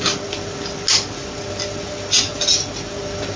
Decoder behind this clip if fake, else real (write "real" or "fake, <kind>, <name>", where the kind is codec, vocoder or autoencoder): real